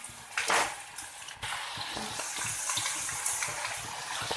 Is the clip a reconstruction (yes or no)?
no